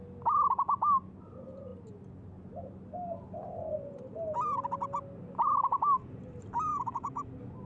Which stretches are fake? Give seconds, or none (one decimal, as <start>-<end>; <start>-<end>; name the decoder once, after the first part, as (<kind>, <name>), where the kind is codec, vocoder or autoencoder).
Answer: 6.7-7.3 (autoencoder, DAC-VAE)